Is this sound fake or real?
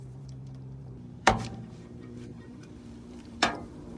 fake